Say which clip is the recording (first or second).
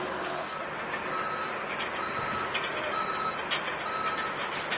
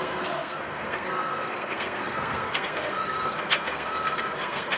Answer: first